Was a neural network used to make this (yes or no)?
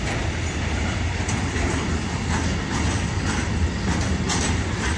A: no